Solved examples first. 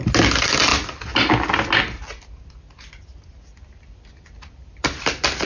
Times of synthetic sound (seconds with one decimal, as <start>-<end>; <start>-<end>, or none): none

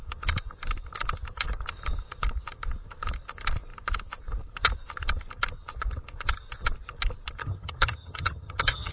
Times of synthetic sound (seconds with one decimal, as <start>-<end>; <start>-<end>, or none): 7.4-8.9

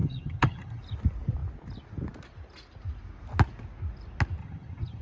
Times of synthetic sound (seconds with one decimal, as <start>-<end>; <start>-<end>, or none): 0.0-0.8; 4.4-5.0

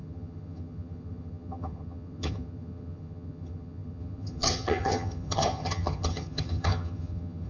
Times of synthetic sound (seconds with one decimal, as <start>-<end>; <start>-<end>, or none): 0.0-7.5

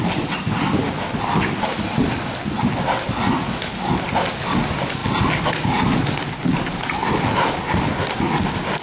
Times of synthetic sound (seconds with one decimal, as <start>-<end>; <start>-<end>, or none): none

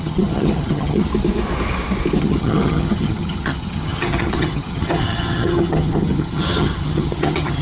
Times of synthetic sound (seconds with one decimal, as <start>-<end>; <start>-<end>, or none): 0.0-1.1; 2.2-7.6

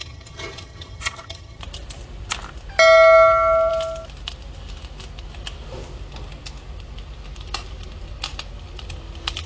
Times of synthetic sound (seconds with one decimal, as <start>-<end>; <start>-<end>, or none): 0.0-1.6